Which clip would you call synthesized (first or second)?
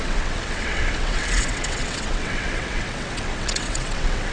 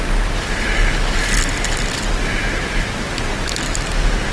first